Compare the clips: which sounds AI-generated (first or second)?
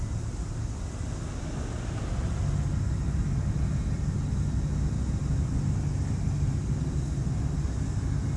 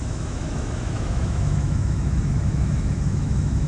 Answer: second